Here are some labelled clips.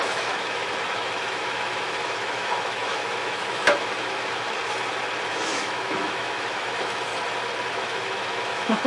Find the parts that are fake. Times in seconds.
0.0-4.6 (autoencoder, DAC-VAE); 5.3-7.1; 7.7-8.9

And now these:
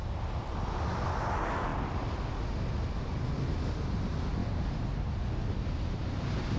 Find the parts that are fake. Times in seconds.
4.4-5.0 (vocoder, BigVGAN v2)